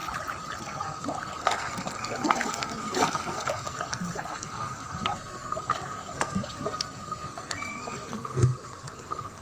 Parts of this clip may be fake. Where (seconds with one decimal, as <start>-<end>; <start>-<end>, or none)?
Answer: 0.6-9.4